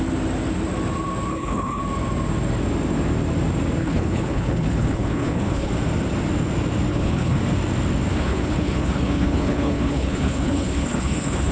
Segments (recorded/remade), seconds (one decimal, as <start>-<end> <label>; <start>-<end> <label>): 0.0-1.3 recorded; 1.3-1.8 remade; 1.8-3.8 recorded; 3.8-5.7 remade; 5.7-6.9 recorded; 6.9-7.4 remade; 7.4-8.1 recorded; 8.1-11.5 remade